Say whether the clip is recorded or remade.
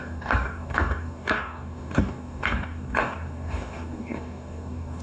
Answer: remade